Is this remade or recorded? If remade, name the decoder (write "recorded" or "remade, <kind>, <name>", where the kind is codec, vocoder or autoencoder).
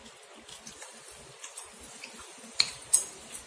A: recorded